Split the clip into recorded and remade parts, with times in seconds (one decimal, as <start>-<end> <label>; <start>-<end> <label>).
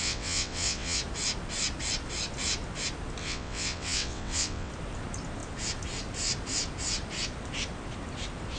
0.0-1.0 remade; 1.0-3.2 recorded; 3.2-4.7 remade; 4.7-8.6 recorded